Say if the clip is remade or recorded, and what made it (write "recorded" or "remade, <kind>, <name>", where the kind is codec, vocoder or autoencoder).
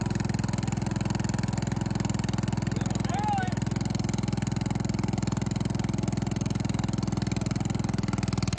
recorded